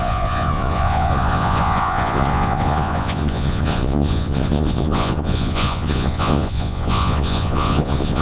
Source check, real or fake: fake